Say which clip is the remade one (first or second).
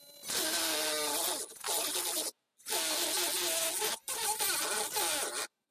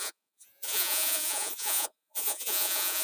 second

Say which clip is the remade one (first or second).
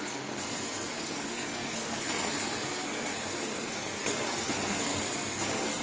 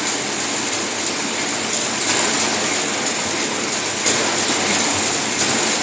first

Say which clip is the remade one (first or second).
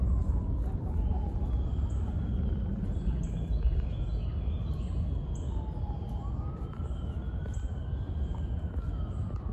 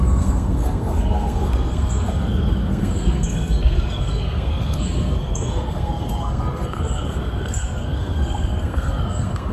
second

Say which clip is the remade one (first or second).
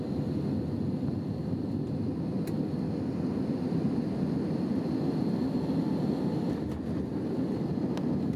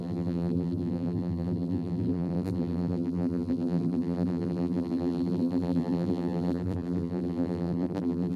second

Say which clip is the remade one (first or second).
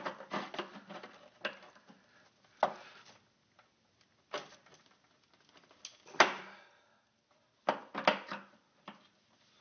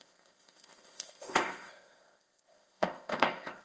second